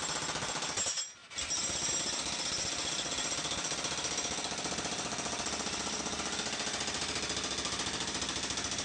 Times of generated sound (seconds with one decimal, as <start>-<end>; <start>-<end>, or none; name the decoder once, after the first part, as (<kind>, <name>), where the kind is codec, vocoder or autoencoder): none